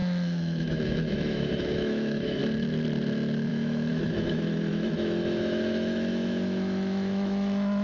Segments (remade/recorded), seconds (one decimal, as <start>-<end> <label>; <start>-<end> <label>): 0.0-2.4 remade; 2.4-3.5 recorded; 3.5-7.8 remade